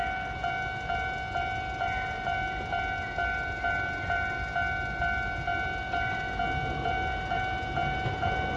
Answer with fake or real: real